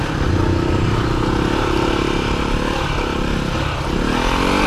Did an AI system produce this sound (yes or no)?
yes